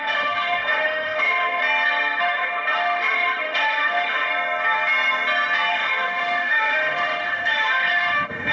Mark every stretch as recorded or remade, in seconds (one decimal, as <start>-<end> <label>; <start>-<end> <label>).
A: 0.0-1.6 remade; 1.6-2.2 recorded; 2.2-4.3 remade; 4.3-5.7 recorded; 5.7-8.5 remade